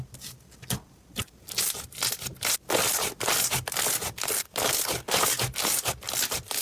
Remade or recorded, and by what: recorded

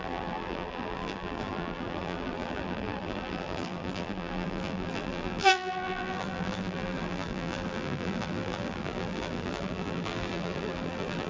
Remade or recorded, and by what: remade, vocoder, BigVGAN v2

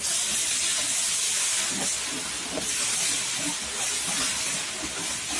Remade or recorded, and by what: recorded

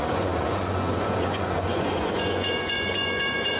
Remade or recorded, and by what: remade, vocoder, Vocos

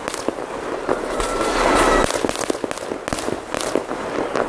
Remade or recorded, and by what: recorded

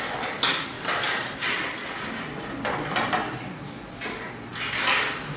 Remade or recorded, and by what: recorded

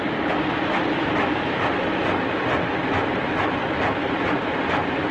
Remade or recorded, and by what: recorded